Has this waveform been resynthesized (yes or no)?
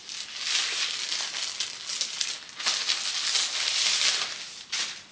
no